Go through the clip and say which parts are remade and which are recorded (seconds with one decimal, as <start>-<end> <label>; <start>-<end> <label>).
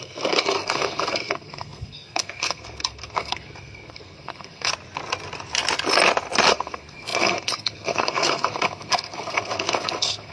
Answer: 0.0-4.7 remade; 4.7-6.5 recorded; 6.5-10.3 remade